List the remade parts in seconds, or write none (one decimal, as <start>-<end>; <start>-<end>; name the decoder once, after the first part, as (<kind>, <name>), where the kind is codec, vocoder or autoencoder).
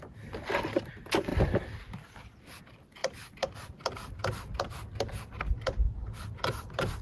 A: none